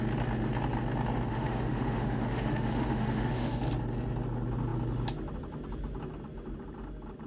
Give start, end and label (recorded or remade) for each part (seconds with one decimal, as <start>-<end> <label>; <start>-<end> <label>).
0.0-1.3 recorded; 1.3-3.6 remade; 3.6-7.3 recorded